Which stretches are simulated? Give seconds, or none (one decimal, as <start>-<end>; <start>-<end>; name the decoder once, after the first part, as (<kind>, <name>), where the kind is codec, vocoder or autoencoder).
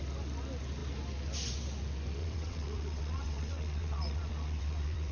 2.2-5.1 (vocoder, WaveNeXt)